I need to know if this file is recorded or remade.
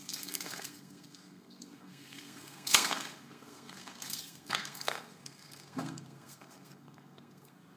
remade